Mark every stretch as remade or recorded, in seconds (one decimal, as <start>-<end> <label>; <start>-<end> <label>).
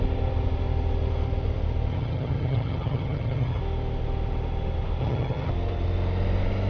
0.0-1.9 recorded; 1.9-3.6 remade; 3.6-5.0 recorded; 5.0-5.5 remade; 5.5-6.7 recorded